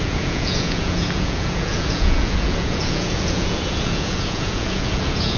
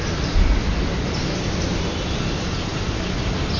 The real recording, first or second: second